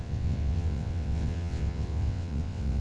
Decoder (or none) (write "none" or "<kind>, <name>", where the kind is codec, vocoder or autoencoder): vocoder, WaveNeXt